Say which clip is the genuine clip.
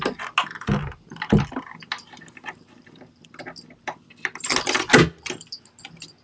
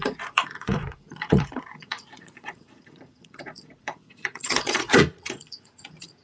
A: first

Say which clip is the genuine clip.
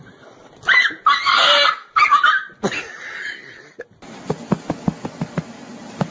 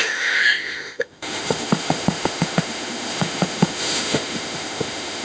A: first